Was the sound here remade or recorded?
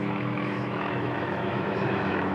remade